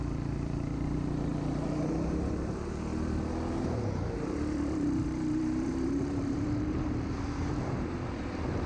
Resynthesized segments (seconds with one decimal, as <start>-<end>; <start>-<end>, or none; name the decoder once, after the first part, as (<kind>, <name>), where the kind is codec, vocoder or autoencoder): 0.0-2.9 (vocoder, BigVGAN v2); 3.7-8.7